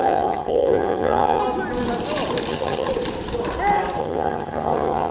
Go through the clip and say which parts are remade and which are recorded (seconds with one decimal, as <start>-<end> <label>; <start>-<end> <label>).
0.0-1.4 remade; 1.4-2.5 recorded; 2.5-2.9 remade; 2.9-4.0 recorded; 4.0-5.1 remade